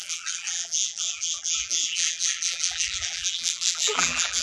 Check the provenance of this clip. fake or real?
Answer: fake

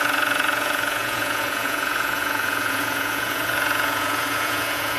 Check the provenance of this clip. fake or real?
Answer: fake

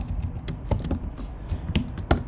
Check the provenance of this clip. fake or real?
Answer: real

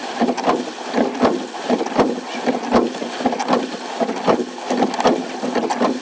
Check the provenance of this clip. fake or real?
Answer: real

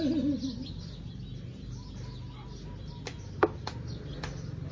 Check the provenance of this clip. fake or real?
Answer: real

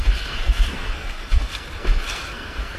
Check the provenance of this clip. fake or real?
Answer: fake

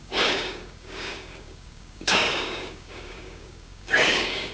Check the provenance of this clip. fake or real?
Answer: fake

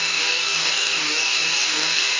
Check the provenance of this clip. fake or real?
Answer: fake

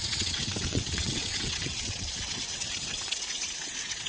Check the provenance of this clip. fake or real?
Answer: fake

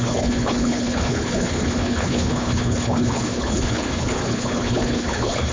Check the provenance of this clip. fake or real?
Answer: fake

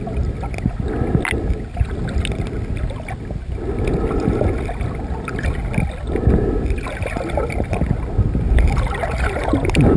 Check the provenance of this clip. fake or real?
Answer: real